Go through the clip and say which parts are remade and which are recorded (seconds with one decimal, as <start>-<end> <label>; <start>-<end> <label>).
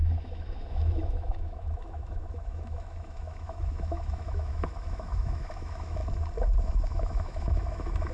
0.0-6.0 remade; 6.0-6.6 recorded; 6.6-8.1 remade